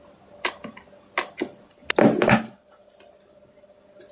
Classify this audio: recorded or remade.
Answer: recorded